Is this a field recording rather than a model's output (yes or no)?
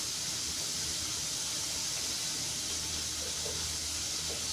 yes